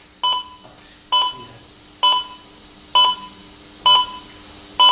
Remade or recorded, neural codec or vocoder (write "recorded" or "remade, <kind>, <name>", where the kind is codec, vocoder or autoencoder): recorded